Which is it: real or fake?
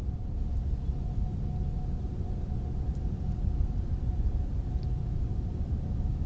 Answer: real